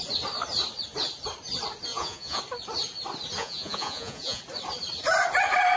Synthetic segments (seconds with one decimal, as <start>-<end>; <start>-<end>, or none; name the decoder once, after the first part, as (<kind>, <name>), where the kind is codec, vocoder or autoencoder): 1.9-2.4 (vocoder, Vocos); 3.4-4.4